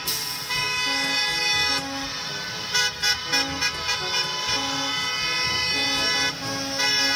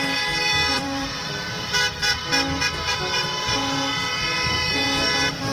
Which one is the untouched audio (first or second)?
first